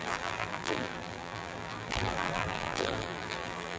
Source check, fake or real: fake